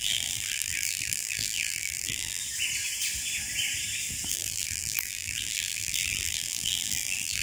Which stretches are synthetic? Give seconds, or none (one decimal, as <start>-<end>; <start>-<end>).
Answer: 0.0-2.4; 4.3-7.4